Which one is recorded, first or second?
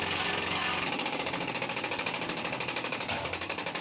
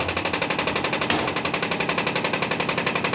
second